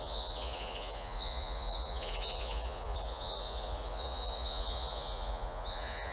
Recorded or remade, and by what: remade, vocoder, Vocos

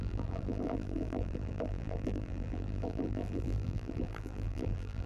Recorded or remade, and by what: remade, vocoder, BigVGAN v2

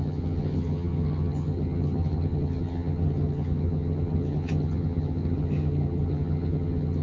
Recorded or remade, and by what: remade, vocoder, HiFi-GAN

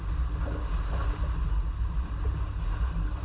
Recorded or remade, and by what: recorded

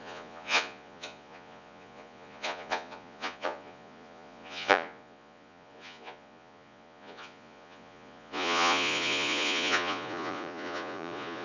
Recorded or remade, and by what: remade, vocoder, Vocos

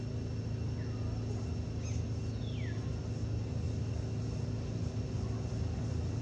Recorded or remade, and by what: recorded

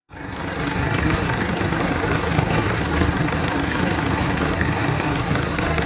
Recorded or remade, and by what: remade, codec, SNAC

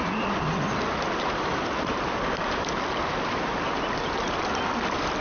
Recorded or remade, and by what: recorded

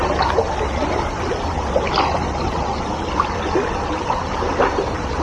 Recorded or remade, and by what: recorded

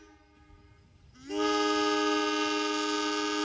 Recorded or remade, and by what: recorded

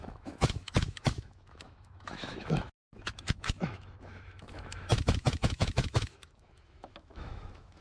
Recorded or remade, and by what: remade, autoencoder, DAC-VAE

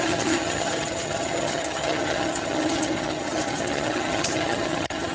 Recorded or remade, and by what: remade, vocoder, HiFi-GAN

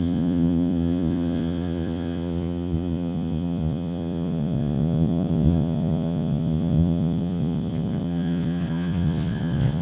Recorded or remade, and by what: remade, vocoder, Vocos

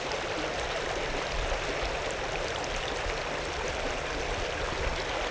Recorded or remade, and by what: recorded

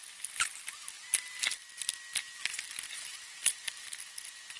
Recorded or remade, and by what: recorded